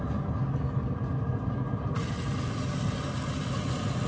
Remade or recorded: recorded